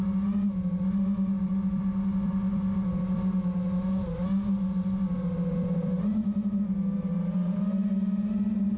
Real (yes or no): yes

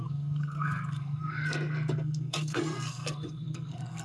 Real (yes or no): no